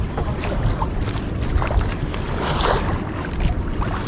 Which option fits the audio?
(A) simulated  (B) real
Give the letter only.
B